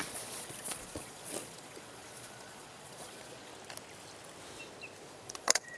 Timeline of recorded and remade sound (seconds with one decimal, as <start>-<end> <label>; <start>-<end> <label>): 0.0-3.5 remade; 3.5-5.1 recorded; 5.1-5.8 remade